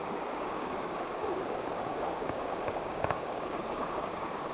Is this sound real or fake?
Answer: fake